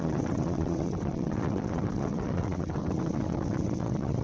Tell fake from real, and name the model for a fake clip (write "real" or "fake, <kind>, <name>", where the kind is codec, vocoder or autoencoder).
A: fake, vocoder, WaveNeXt